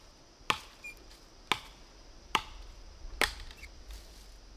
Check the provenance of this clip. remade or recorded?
recorded